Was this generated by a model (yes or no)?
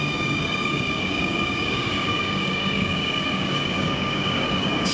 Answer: yes